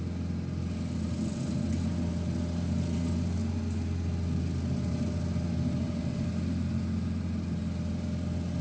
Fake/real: real